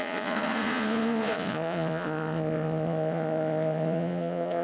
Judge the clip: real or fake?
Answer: fake